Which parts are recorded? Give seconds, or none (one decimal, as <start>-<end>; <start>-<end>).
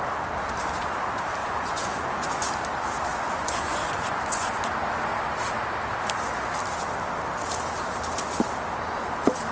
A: 0.0-1.4; 2.5-3.1; 4.6-9.5